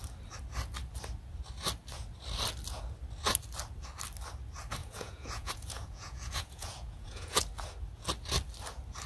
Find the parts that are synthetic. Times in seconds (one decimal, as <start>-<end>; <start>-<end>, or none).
4.8-7.4